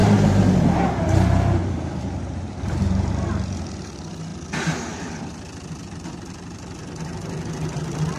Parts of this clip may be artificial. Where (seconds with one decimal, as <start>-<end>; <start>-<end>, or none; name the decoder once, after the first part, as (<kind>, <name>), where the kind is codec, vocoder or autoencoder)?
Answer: 0.0-3.1 (vocoder, BigVGAN v2)